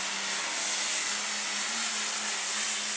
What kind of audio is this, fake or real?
real